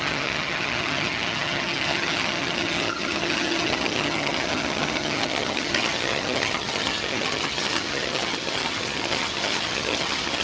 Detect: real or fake fake